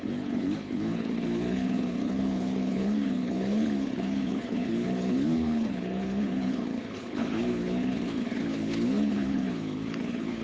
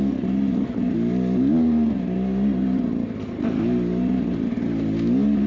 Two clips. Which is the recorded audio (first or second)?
second